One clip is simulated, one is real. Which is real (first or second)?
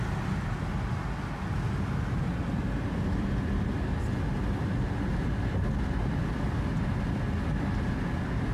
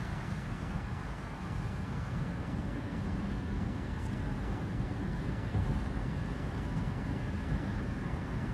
first